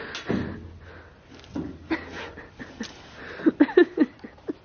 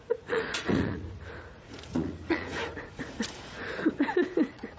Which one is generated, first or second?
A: second